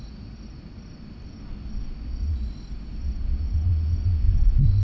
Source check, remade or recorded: recorded